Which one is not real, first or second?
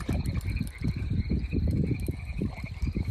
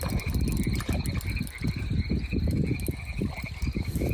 first